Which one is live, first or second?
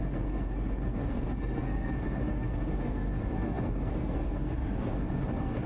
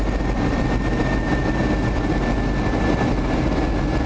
second